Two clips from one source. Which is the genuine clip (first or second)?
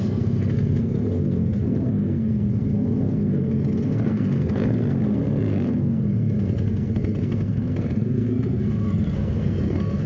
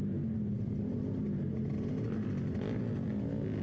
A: second